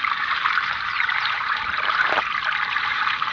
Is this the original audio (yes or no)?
no